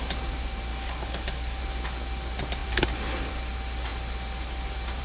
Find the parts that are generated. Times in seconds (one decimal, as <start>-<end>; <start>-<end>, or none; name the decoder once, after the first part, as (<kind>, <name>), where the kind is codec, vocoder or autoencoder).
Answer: 0.7-1.6 (codec, DAC)